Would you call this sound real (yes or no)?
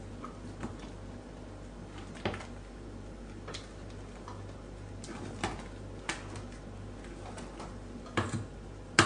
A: yes